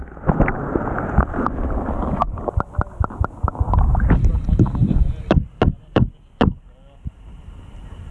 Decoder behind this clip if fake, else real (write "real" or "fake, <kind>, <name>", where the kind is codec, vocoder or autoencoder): real